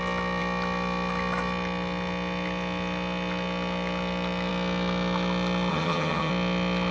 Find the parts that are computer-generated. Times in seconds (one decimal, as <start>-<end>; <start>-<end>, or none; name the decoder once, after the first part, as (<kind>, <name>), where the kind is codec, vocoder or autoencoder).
5.7-6.3 (vocoder, HiFi-GAN)